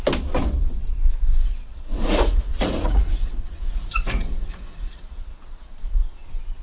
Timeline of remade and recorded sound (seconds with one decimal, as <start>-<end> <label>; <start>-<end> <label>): 0.0-1.7 recorded; 1.7-5.7 remade; 5.7-6.6 recorded